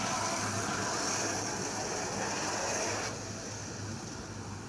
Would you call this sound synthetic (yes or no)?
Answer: no